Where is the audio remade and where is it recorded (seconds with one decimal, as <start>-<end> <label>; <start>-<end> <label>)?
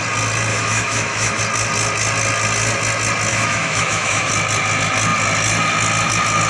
0.0-0.5 recorded; 0.5-1.4 remade; 1.4-3.3 recorded; 3.3-4.3 remade; 4.3-6.5 recorded